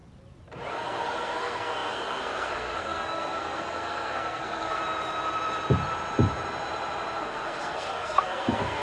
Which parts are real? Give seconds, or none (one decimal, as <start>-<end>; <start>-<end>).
0.0-0.7; 4.8-7.2